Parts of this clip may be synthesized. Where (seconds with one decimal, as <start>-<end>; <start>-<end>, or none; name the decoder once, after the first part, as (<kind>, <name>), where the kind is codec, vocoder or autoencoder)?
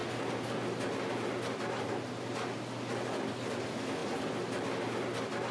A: none